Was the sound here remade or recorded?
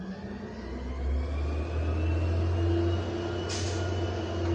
recorded